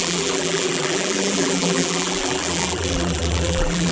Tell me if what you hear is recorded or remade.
remade